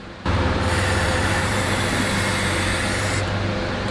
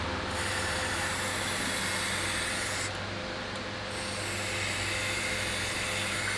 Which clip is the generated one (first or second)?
first